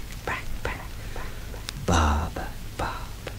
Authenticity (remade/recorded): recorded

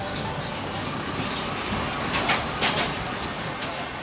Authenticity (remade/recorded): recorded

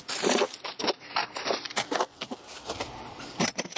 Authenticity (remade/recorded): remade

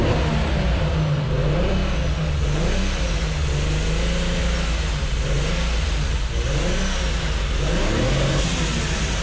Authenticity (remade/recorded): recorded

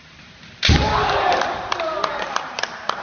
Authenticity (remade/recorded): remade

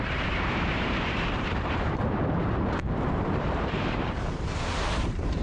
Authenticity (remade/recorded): remade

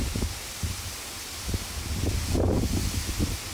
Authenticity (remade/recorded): recorded